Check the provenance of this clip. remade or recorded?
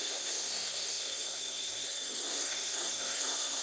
remade